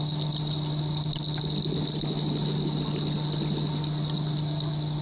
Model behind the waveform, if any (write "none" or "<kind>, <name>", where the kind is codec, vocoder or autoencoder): none